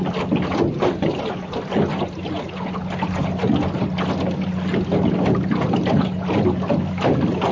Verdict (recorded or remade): recorded